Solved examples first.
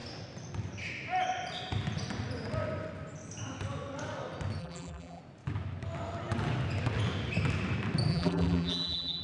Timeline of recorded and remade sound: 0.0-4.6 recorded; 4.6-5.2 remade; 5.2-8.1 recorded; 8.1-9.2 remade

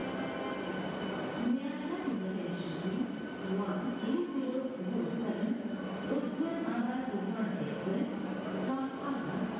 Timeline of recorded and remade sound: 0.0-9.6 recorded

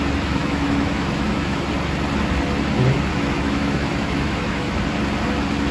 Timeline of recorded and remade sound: 0.0-0.4 recorded; 0.4-1.6 remade; 1.6-3.1 recorded; 3.1-4.8 remade; 4.8-5.7 recorded

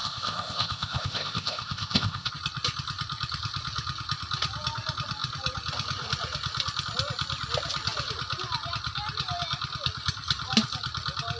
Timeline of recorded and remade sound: 0.0-2.3 remade; 2.3-11.4 recorded

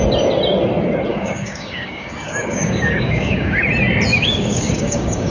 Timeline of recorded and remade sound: 0.0-1.1 recorded; 1.1-3.6 remade; 3.6-4.1 recorded; 4.1-5.3 remade